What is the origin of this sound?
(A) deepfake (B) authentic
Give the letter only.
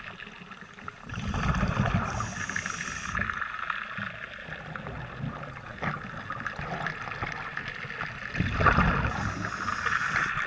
B